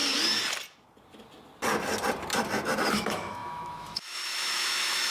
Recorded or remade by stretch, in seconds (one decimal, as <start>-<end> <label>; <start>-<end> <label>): 0.0-2.9 recorded; 2.9-5.1 remade